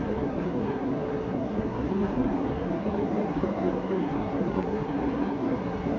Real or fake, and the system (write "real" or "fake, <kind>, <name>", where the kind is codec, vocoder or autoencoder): fake, codec, SNAC